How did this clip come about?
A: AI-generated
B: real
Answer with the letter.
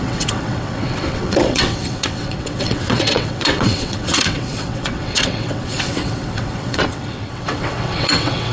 A